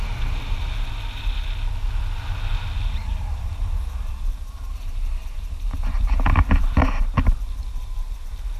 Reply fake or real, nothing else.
real